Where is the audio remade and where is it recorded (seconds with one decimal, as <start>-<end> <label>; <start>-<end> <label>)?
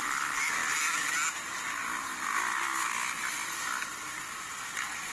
0.0-3.4 recorded; 3.4-4.1 remade; 4.1-5.1 recorded